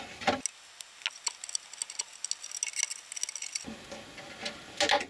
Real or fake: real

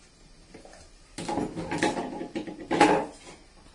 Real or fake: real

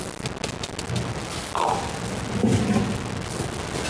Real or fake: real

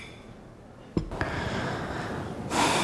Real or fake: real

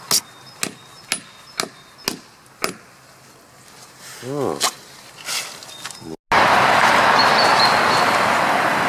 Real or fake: real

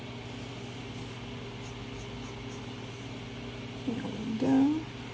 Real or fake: real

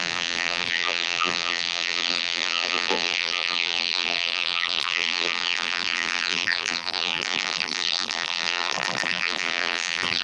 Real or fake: fake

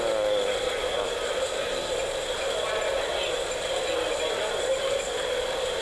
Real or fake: real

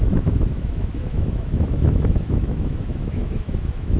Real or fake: fake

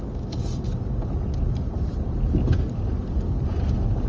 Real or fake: real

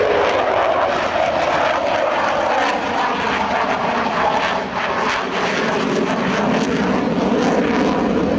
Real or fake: real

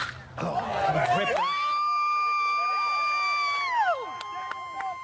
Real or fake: real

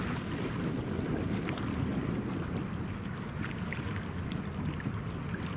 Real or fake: real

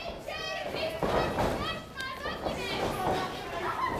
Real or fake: fake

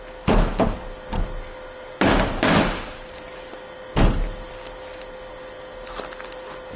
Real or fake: real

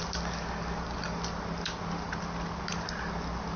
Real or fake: real